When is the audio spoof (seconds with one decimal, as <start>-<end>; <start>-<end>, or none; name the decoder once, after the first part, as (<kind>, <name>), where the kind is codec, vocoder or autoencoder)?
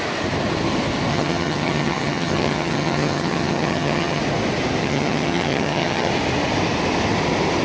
1.1-4.2 (vocoder, HiFi-GAN); 4.8-6.1